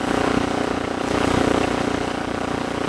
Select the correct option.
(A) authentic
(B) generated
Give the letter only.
B